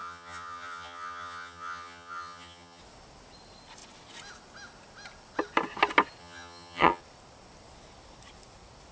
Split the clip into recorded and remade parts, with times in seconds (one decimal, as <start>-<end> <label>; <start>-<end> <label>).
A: 0.0-2.8 remade; 2.8-6.2 recorded; 6.2-7.0 remade; 7.0-8.9 recorded